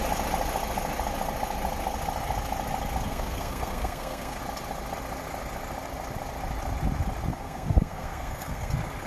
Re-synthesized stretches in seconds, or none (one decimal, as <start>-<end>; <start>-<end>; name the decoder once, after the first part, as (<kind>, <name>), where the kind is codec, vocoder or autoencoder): 3.1-4.4 (codec, SNAC); 7.3-8.7